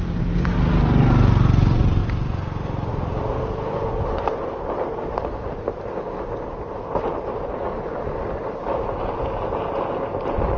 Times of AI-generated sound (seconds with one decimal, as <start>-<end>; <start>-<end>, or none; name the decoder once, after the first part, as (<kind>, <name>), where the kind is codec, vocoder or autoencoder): none